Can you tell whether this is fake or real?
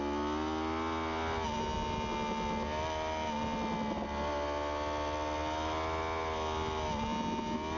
real